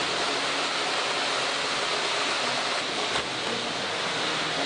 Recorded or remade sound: recorded